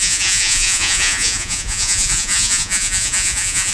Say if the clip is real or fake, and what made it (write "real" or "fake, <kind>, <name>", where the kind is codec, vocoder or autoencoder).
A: fake, vocoder, Vocos